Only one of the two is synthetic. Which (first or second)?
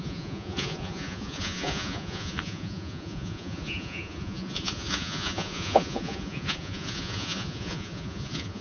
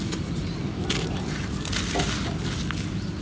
first